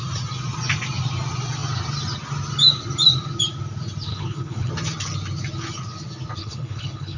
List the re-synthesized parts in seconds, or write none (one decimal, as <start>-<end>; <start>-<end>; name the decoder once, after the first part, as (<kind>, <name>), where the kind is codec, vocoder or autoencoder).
4.1-4.7 (codec, HILCodec); 6.4-7.2